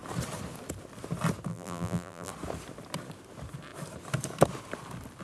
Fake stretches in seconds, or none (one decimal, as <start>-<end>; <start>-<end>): 1.5-2.3